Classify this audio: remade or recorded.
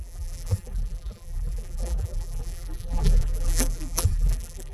remade